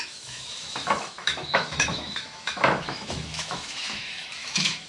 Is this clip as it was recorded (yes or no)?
no